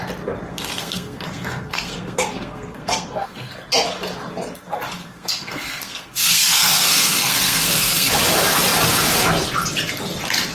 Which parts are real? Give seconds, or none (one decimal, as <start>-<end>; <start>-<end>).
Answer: 0.0-0.5; 3.5-5.0; 8.1-10.5